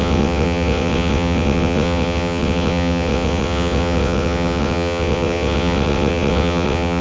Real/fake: fake